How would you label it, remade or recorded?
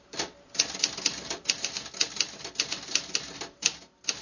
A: recorded